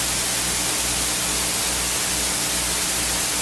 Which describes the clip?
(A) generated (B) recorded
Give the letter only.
B